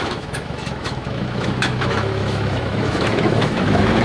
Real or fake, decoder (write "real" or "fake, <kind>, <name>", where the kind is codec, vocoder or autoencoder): fake, autoencoder, DAC-VAE